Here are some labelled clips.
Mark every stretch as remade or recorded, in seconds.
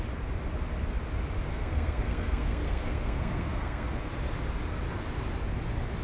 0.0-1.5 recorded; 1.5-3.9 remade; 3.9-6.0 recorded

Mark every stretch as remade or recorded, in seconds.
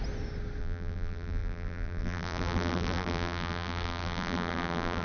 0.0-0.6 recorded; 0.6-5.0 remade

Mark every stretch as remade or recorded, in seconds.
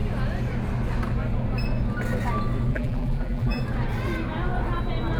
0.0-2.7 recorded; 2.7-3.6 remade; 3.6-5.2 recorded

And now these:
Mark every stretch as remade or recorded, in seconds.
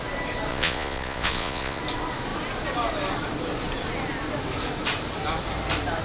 0.0-0.5 recorded; 0.5-1.8 remade; 1.8-6.0 recorded